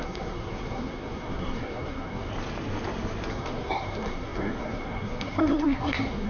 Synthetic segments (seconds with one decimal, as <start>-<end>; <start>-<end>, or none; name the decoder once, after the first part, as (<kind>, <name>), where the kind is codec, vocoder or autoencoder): 0.0-2.3 (codec, SNAC); 3.3-6.3